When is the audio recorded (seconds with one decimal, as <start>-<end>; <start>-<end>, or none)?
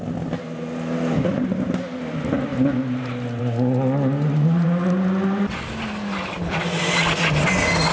0.0-7.9